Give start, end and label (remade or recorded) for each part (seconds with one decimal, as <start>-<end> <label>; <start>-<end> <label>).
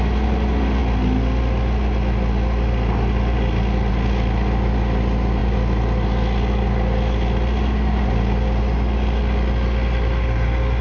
0.0-10.8 recorded